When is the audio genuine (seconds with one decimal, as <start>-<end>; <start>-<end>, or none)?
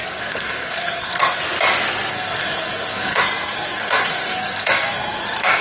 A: 1.4-2.1